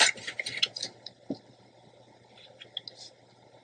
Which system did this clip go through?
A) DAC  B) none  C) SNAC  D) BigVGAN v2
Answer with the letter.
B